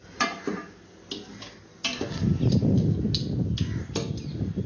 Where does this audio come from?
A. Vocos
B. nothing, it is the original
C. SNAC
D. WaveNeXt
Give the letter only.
B